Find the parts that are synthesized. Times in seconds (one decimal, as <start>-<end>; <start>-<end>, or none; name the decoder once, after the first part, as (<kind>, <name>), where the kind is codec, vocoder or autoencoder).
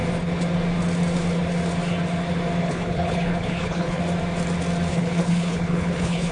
2.6-4.0 (codec, HILCodec); 4.9-6.3